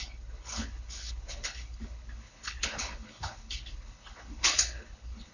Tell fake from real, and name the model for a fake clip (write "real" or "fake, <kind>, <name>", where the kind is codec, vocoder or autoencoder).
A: fake, codec, HILCodec